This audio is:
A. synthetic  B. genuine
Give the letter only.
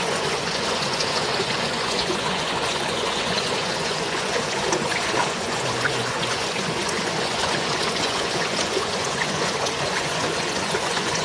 A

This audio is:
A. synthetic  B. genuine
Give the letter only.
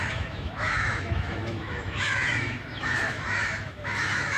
A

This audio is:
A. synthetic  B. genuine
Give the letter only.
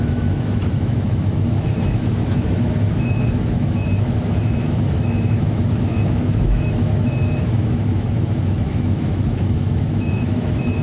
A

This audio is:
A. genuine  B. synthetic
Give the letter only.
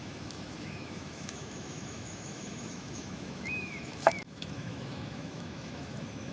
B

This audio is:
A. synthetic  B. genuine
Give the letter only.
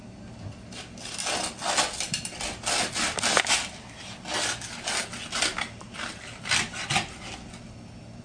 B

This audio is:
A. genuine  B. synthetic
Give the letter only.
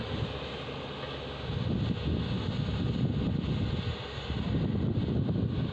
A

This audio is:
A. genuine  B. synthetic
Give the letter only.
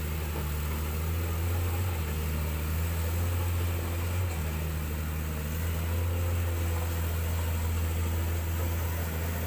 A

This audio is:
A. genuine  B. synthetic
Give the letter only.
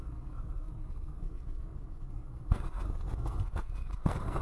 B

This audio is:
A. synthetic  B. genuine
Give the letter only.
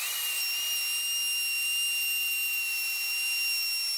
B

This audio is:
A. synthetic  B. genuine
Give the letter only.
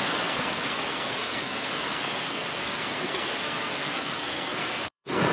A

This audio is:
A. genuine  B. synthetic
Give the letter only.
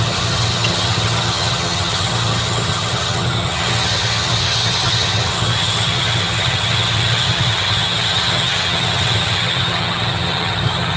B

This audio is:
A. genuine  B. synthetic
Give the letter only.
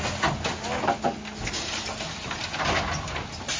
A